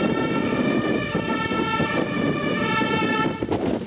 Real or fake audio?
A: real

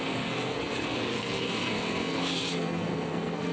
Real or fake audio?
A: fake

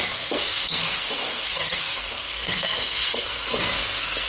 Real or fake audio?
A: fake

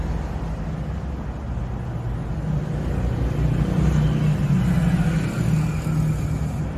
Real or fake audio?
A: real